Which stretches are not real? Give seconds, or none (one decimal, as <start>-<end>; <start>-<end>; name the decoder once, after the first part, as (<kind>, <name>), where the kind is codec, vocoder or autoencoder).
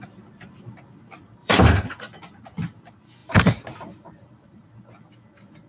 1.4-2.0 (vocoder, BigVGAN v2); 3.2-4.7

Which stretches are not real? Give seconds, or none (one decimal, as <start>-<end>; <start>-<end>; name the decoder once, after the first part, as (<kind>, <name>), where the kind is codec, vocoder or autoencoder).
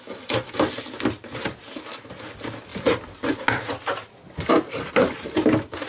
none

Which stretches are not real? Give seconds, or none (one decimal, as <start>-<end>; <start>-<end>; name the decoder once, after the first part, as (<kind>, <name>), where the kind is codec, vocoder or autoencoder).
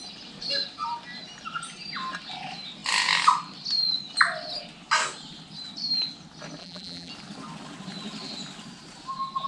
6.6-7.1 (vocoder, BigVGAN v2)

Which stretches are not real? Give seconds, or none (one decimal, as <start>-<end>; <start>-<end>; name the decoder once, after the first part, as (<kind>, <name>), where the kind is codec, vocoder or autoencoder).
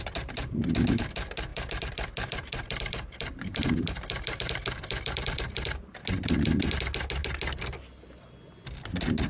1.5-6.0 (vocoder, BigVGAN v2)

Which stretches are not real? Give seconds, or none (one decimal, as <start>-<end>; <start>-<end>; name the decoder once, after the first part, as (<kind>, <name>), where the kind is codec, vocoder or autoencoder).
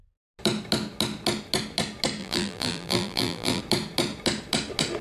2.2-3.6 (vocoder, BigVGAN v2)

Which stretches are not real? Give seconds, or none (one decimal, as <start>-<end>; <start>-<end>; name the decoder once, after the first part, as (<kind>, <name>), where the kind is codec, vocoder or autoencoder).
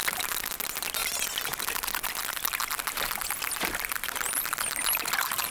0.0-1.0 (vocoder, BigVGAN v2); 1.6-5.5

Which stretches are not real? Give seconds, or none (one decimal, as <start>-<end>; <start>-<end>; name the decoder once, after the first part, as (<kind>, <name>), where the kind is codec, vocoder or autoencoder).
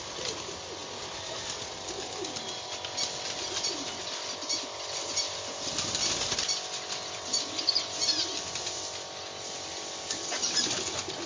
none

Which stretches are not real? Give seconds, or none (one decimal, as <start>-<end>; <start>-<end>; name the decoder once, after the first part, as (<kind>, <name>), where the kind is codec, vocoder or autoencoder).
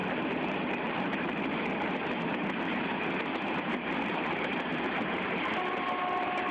0.0-1.4 (vocoder, BigVGAN v2)